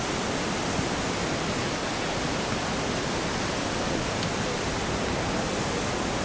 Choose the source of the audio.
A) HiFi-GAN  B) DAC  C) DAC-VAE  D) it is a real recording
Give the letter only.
D